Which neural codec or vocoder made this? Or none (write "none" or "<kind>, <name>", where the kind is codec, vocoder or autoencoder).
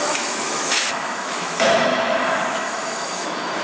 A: autoencoder, DAC-VAE